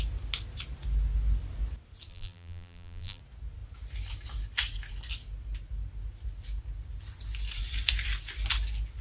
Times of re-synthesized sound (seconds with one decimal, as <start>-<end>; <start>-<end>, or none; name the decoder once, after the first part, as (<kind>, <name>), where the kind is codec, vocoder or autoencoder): 2.1-3.2 (vocoder, BigVGAN v2)

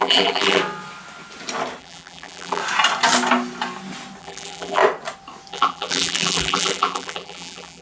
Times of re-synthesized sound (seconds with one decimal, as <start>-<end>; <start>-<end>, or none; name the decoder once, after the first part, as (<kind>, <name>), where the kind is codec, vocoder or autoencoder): 0.0-0.6 (vocoder, BigVGAN v2); 1.8-2.6; 4.2-4.8; 5.5-7.8

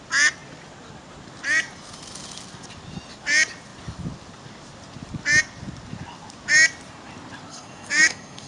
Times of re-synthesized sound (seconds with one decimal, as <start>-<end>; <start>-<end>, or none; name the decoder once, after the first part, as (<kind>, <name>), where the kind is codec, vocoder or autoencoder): 7.5-8.5 (codec, SNAC)

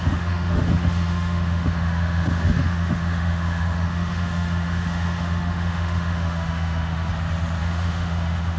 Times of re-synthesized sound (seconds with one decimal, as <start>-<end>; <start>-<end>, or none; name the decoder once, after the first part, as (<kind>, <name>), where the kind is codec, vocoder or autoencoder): 0.0-7.1 (autoencoder, DAC-VAE); 7.6-8.6